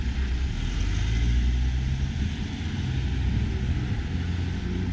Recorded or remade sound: recorded